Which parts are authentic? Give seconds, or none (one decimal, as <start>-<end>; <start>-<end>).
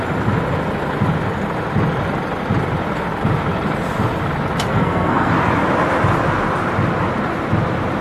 0.0-4.7; 5.3-8.0